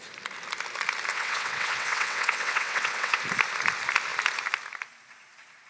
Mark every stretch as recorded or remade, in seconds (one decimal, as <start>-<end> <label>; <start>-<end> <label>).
0.0-1.1 recorded; 1.1-3.2 remade; 3.2-5.7 recorded